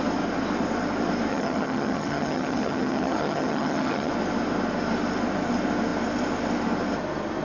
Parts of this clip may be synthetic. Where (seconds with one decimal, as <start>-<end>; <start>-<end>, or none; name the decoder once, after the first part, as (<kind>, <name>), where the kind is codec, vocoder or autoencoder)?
1.3-4.1 (vocoder, HiFi-GAN)